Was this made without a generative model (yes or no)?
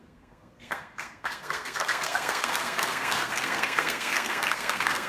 no